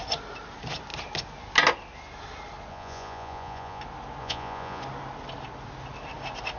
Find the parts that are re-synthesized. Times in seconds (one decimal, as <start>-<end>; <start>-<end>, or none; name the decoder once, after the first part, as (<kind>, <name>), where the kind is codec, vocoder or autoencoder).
2.7-3.8 (vocoder, Vocos); 4.2-4.8